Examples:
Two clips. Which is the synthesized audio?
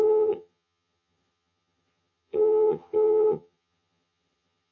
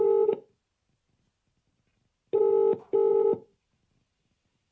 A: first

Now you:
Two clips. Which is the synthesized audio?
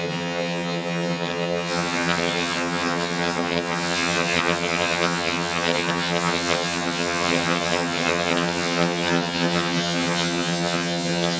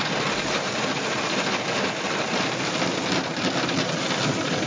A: first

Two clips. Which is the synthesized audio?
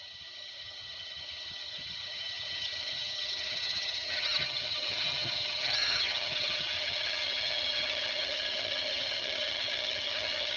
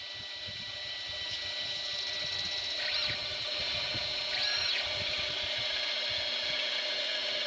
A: first